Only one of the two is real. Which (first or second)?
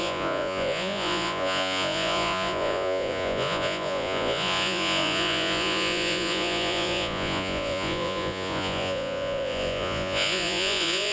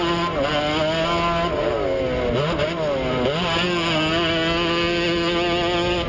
second